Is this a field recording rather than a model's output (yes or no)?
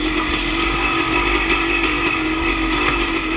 yes